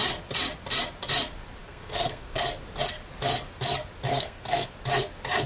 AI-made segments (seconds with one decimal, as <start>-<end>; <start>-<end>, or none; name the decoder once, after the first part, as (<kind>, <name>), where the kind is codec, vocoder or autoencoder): 1.6-2.4 (codec, SNAC); 4.1-4.7